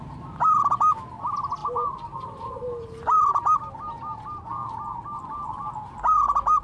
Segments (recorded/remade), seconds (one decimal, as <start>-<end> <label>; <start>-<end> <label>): 0.0-1.6 recorded; 1.6-3.3 remade; 3.3-6.6 recorded